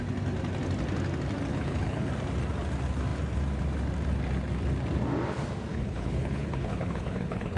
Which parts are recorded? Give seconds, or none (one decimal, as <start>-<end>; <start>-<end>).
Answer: 0.0-1.5; 2.1-5.7